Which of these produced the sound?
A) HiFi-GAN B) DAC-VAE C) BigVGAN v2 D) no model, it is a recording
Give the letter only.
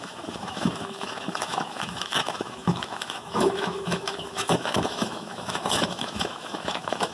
B